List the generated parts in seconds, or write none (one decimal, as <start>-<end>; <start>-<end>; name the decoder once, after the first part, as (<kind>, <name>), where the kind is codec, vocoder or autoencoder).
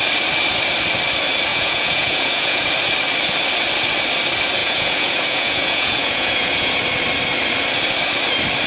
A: 1.5-2.7 (vocoder, Vocos); 4.6-6.7